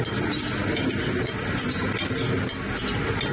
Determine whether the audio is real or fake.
real